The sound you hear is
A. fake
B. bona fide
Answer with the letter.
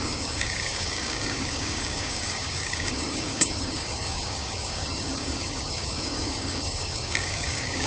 A